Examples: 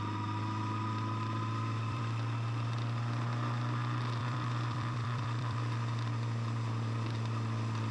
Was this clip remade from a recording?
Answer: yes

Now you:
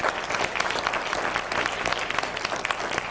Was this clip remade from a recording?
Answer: no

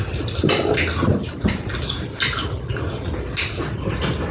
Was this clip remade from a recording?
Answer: no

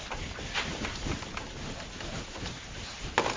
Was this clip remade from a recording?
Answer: no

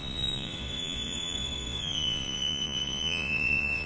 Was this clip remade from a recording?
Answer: yes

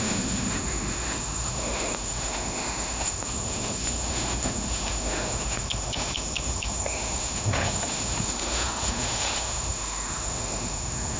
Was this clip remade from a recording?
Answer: yes